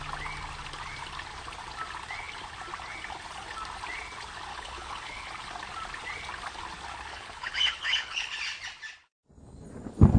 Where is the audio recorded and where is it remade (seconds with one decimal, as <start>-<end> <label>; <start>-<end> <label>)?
0.0-4.5 recorded; 4.5-5.3 remade; 5.3-7.1 recorded; 7.1-8.3 remade; 8.3-10.2 recorded